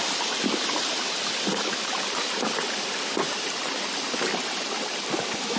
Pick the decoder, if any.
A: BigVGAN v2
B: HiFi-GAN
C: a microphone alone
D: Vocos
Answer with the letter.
C